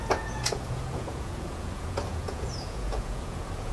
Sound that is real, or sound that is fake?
fake